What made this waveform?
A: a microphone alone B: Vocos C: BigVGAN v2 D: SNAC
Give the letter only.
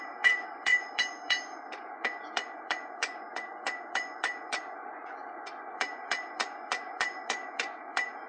B